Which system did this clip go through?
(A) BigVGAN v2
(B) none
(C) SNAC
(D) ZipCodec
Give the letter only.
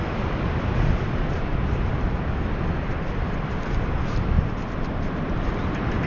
B